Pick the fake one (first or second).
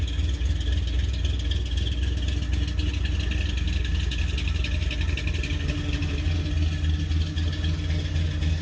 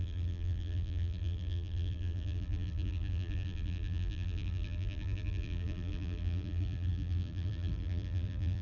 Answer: second